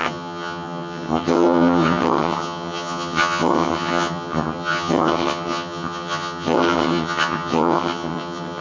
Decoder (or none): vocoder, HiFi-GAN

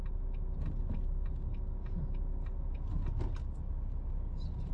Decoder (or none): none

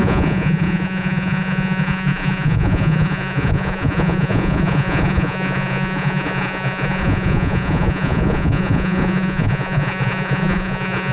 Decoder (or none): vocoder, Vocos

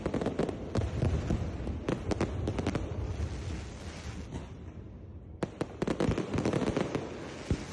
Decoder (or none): none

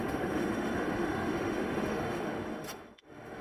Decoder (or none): autoencoder, DAC-VAE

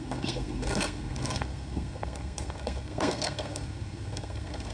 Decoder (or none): codec, SNAC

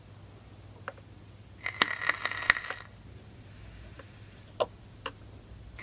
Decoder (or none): none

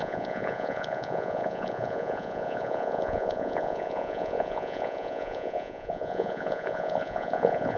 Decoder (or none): vocoder, Vocos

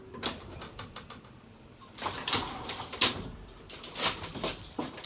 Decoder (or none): vocoder, BigVGAN v2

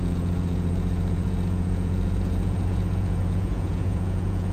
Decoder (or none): vocoder, Vocos